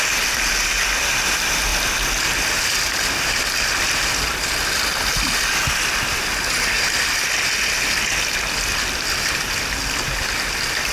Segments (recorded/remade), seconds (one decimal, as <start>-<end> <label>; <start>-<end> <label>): 0.0-10.9 recorded